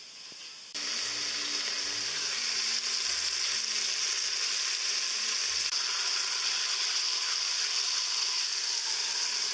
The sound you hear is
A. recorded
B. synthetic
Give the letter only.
A